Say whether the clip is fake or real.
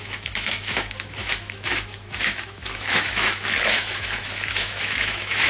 fake